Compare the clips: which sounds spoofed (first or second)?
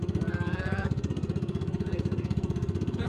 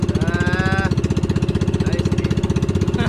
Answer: first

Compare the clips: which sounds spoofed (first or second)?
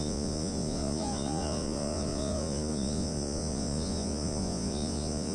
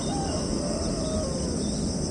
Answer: first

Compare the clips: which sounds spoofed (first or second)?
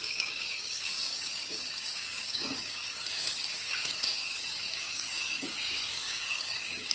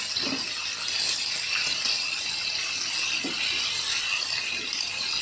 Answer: first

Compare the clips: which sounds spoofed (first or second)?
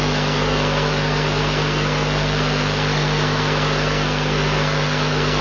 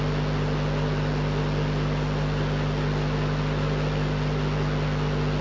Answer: first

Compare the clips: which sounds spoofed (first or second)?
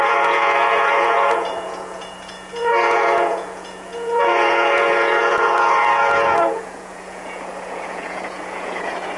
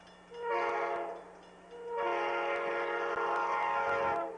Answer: first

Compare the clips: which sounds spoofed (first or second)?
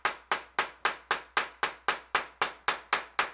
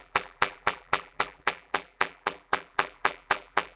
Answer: second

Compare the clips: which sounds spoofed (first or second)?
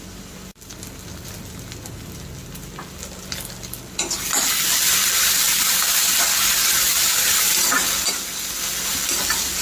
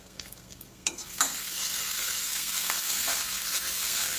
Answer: second